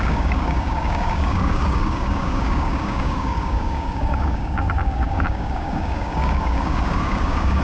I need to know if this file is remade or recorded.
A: remade